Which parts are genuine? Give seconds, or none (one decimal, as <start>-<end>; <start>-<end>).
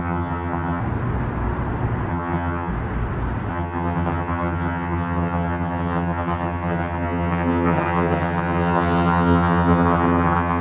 0.8-2.1; 2.7-3.5